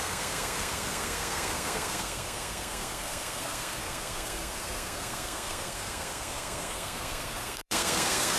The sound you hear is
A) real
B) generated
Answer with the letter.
B